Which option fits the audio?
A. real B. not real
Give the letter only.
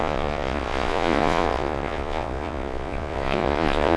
B